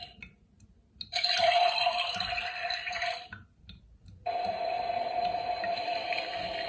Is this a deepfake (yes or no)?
no